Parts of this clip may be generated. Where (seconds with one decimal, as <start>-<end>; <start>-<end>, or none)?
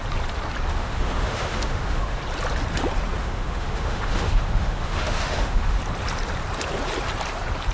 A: 0.7-2.2; 3.2-5.8